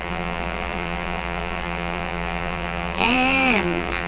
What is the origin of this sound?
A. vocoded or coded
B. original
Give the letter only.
A